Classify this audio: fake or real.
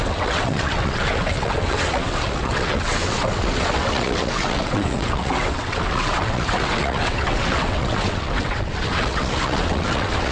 fake